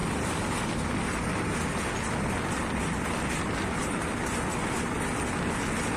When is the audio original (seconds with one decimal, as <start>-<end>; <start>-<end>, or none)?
0.0-6.0